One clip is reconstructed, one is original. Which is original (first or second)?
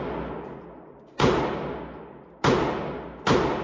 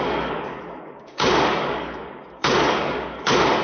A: first